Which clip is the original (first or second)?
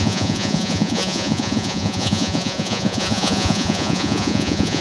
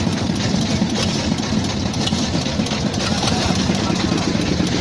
second